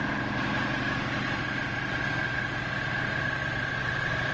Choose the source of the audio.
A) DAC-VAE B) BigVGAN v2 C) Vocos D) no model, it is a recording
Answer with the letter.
D